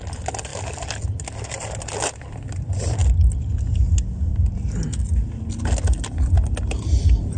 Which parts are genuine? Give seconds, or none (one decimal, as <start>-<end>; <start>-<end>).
0.0-7.4